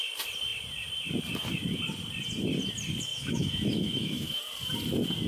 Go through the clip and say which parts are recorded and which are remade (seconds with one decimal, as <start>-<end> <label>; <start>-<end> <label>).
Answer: 0.0-3.1 recorded; 3.1-4.4 remade; 4.4-5.3 recorded